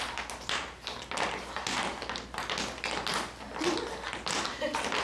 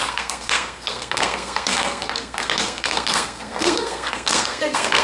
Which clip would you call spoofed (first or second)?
second